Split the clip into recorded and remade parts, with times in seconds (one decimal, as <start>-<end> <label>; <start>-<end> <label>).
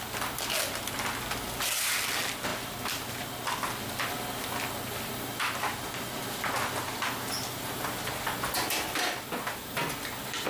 0.0-10.5 recorded